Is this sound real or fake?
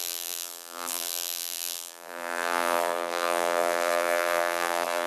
fake